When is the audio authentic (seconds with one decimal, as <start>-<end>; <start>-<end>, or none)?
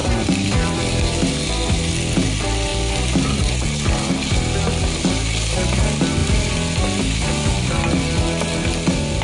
0.9-9.2